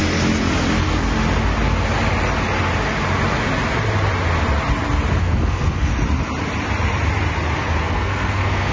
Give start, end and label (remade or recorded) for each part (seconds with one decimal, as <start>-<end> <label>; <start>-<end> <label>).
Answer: 0.0-5.2 recorded; 5.2-5.9 remade; 5.9-7.8 recorded; 7.8-8.7 remade